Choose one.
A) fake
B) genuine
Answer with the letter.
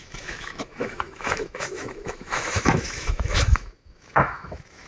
A